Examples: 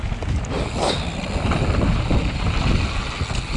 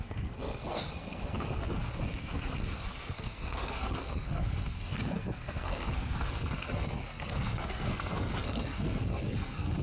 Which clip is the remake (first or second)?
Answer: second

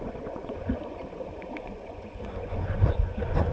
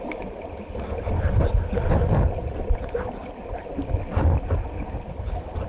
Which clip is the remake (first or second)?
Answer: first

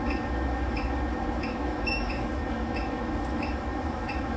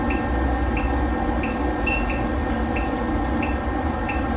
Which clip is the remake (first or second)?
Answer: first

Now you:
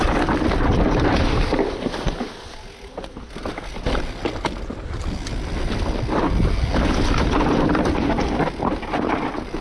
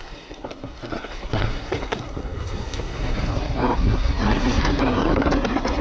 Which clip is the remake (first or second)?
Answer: second